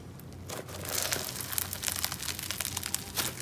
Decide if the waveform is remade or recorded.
recorded